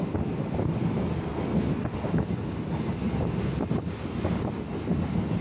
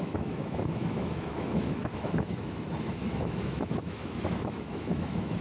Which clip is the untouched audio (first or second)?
first